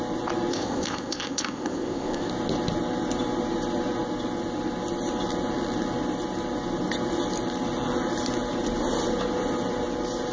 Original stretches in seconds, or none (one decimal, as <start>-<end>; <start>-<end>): 0.0-0.5; 2.3-10.3